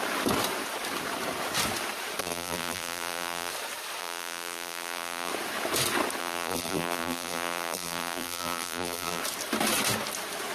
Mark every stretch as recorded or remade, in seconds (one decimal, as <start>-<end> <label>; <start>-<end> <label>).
0.0-2.2 recorded; 2.2-3.5 remade; 3.5-4.0 recorded; 4.0-5.3 remade; 5.3-6.2 recorded; 6.2-9.2 remade; 9.2-10.5 recorded